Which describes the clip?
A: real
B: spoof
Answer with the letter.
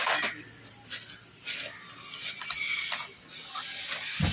A